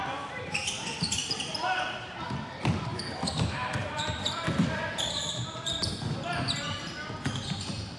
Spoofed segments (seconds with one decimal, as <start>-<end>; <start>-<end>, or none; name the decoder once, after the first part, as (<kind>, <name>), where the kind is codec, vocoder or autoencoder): 0.0-8.0 (vocoder, BigVGAN v2)